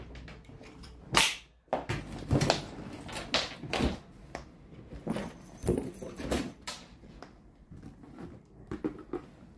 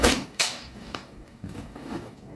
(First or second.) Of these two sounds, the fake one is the second